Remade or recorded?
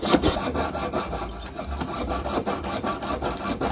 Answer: recorded